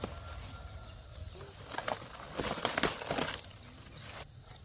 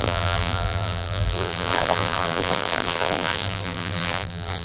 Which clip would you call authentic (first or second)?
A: first